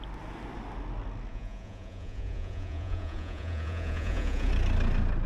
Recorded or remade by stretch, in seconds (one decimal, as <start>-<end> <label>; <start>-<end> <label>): 0.0-1.3 recorded; 1.3-4.5 remade; 4.5-5.3 recorded